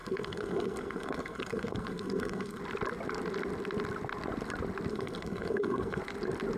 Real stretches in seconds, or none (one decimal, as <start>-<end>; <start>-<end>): 2.6-4.9; 6.0-6.6